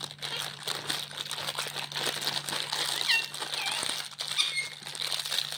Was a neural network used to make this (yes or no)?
no